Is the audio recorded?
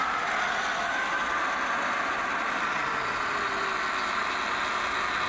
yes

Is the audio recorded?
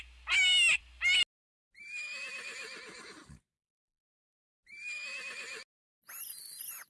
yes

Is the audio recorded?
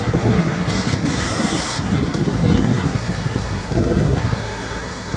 no